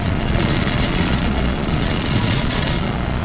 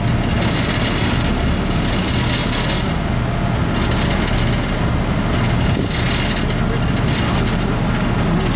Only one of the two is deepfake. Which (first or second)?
first